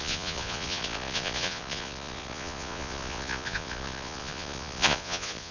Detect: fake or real fake